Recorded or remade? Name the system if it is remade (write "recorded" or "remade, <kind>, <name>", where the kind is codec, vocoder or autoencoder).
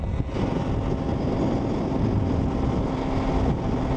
recorded